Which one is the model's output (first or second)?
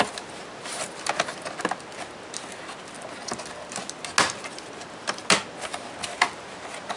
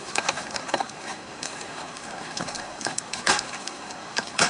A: second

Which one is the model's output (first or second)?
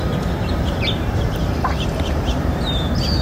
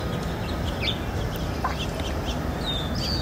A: first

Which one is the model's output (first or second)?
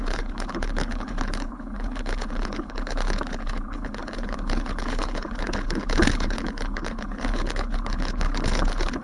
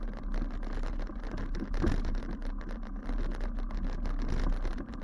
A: first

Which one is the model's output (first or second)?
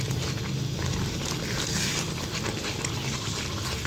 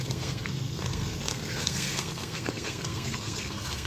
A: second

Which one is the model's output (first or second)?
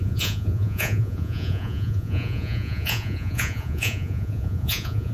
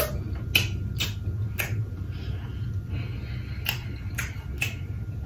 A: first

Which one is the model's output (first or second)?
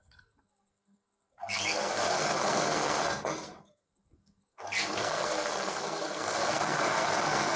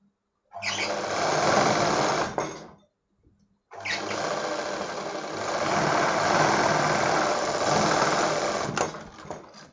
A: first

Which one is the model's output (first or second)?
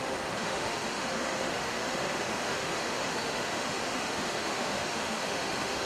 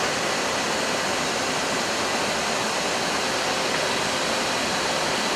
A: first